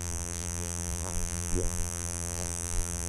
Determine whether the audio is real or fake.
fake